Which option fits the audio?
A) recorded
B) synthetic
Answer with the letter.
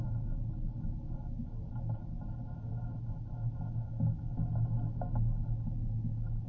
A